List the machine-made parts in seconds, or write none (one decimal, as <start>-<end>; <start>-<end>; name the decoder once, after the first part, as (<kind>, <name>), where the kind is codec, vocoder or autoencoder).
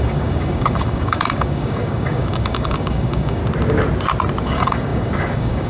0.0-3.4 (codec, DAC); 4.4-5.7